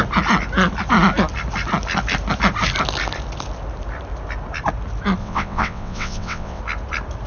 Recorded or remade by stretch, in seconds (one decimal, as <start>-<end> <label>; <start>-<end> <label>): 0.0-5.2 recorded; 5.2-6.6 remade; 6.6-7.3 recorded